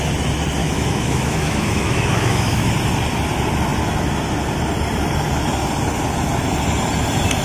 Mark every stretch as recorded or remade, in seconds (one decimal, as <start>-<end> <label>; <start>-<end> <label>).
0.0-0.6 recorded; 0.6-2.7 remade; 2.7-7.4 recorded